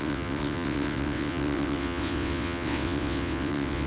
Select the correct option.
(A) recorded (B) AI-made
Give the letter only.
B